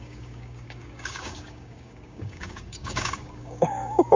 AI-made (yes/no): yes